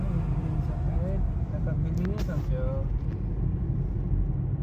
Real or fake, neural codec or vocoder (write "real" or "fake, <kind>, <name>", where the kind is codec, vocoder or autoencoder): real